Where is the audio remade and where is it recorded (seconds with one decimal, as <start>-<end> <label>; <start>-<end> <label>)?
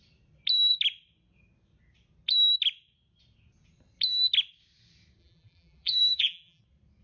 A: 0.0-5.2 recorded; 5.2-6.6 remade; 6.6-7.0 recorded